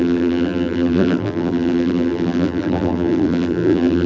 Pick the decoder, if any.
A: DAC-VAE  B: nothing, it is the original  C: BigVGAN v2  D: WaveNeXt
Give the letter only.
C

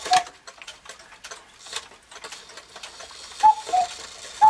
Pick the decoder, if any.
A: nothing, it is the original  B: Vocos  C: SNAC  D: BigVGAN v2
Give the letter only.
A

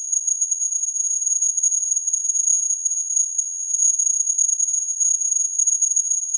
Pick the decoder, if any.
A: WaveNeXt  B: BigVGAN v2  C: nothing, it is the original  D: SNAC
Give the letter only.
B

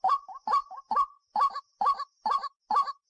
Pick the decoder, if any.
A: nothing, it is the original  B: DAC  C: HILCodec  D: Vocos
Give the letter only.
A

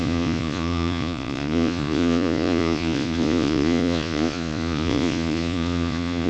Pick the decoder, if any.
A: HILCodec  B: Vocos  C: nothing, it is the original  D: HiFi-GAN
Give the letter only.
B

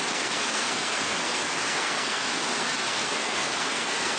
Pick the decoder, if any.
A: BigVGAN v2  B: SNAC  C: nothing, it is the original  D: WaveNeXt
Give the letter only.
B